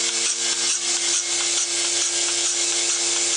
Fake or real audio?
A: real